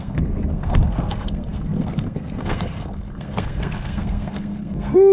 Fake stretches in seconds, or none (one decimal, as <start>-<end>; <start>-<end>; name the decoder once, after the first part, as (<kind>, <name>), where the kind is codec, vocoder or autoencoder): 0.0-5.1 (codec, SNAC)